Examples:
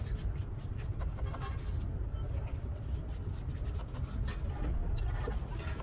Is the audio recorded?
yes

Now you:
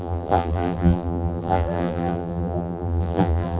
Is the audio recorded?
no